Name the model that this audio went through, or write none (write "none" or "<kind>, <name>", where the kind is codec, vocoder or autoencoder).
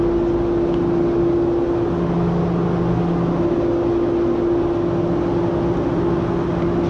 none